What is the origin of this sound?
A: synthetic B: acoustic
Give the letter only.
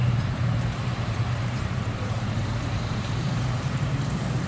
A